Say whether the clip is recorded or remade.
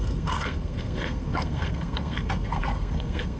remade